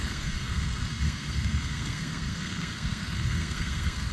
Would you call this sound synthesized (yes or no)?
yes